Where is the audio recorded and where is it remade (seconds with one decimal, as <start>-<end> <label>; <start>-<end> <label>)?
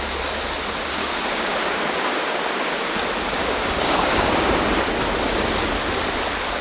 0.0-1.0 recorded; 1.0-2.4 remade; 2.4-3.4 recorded; 3.4-4.7 remade; 4.7-6.6 recorded